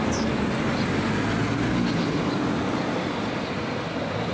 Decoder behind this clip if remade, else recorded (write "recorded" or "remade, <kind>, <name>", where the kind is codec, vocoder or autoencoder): recorded